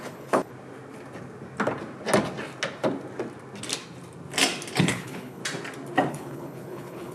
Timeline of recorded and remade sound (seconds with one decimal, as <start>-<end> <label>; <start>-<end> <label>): 0.0-0.5 remade; 0.5-4.8 recorded; 4.8-5.4 remade; 5.4-6.1 recorded; 6.1-7.1 remade